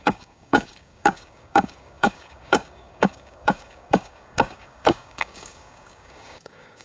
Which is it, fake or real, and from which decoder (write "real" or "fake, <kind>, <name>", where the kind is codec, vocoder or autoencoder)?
fake, codec, DAC